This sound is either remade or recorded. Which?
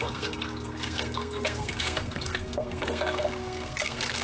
remade